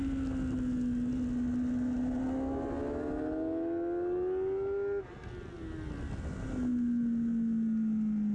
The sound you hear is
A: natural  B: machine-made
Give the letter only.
A